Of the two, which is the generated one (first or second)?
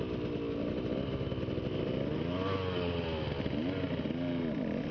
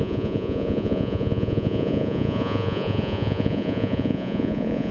second